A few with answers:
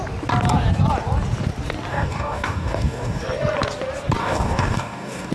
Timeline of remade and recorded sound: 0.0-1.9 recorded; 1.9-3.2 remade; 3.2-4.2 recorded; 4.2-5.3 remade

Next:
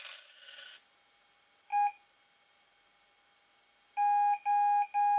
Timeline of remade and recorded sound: 0.0-5.2 recorded

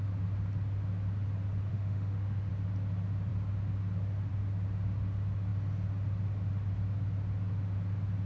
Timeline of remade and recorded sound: 0.0-1.7 recorded; 1.7-2.5 remade; 2.5-8.3 recorded

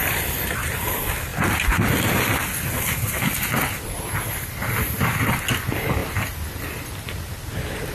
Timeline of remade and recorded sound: 0.0-7.9 recorded

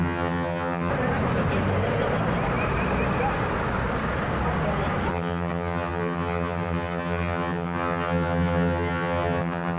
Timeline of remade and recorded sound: 0.0-0.9 remade; 0.9-5.1 recorded; 5.1-9.8 remade

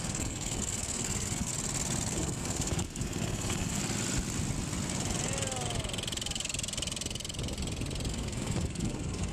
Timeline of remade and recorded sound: 0.0-1.5 remade; 1.5-2.1 recorded; 2.1-3.8 remade; 3.8-8.1 recorded; 8.1-9.3 remade

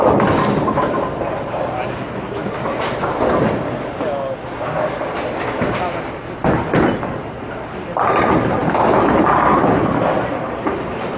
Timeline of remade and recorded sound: 0.0-11.2 recorded